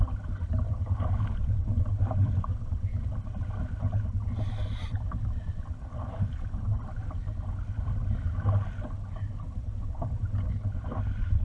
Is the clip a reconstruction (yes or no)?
no